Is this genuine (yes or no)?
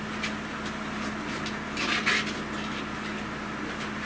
yes